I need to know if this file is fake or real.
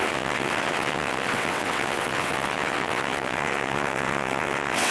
fake